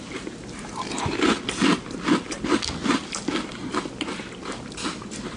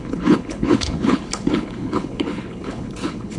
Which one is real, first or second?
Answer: first